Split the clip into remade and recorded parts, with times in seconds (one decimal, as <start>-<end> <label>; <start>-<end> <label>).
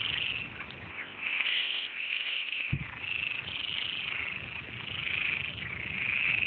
0.0-0.9 recorded; 0.9-2.8 remade; 2.8-6.5 recorded